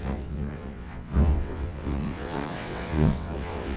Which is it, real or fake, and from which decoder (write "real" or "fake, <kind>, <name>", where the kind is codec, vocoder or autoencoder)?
fake, vocoder, WaveNeXt